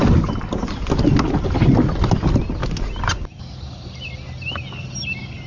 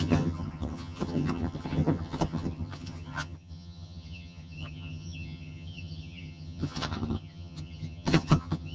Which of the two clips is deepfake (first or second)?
second